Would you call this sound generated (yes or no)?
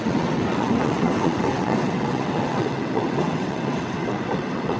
yes